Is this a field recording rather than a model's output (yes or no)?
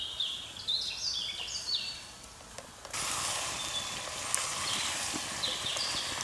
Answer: yes